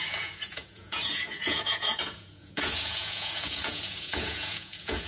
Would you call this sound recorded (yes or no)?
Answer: no